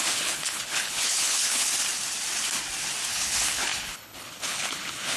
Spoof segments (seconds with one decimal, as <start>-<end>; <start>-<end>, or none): 0.0-1.7; 3.1-5.2